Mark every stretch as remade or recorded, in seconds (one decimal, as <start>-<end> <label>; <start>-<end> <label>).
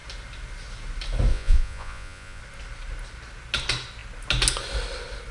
0.0-1.3 recorded; 1.3-2.4 remade; 2.4-5.3 recorded